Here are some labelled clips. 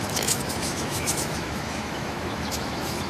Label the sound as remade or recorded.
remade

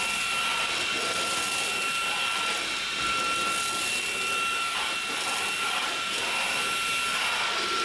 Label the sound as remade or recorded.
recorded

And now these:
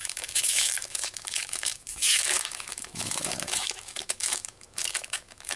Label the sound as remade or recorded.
remade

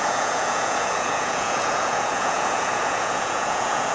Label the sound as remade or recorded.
remade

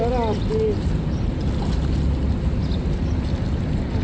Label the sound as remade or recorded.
recorded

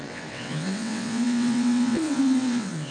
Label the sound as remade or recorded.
remade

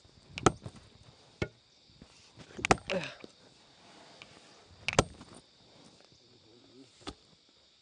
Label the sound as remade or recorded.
recorded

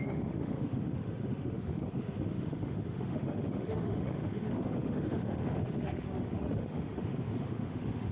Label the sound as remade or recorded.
remade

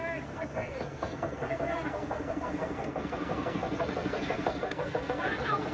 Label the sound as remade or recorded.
remade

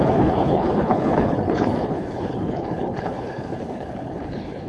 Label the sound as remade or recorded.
remade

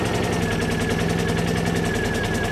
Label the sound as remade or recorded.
recorded